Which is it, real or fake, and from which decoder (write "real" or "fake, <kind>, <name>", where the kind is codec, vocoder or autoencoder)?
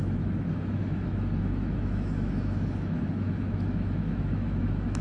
fake, autoencoder, DAC-VAE